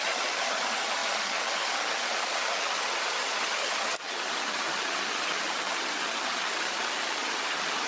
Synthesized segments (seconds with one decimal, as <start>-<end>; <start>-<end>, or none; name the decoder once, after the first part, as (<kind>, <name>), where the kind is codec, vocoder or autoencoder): 0.0-7.9 (vocoder, HiFi-GAN)